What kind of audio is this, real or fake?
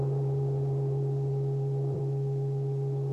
fake